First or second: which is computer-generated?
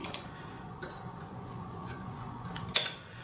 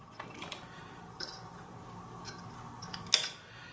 first